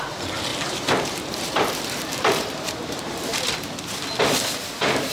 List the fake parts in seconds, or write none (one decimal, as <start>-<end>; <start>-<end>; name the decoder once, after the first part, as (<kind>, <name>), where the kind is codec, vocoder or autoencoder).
0.5-3.6 (vocoder, BigVGAN v2)